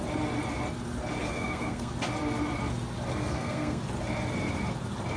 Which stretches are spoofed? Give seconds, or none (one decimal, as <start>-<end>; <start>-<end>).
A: 1.2-1.9; 3.1-3.8